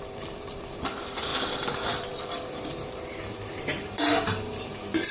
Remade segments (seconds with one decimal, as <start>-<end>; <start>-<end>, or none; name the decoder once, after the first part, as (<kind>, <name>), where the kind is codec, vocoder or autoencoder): 0.0-1.3 (vocoder, BigVGAN v2); 2.0-5.1